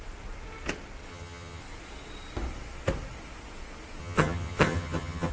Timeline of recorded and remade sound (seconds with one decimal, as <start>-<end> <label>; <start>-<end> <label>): 0.0-1.1 recorded; 1.1-1.6 remade; 1.6-4.0 recorded; 4.0-5.3 remade